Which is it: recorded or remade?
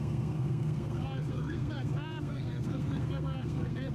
remade